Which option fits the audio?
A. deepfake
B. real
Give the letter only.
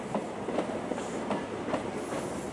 B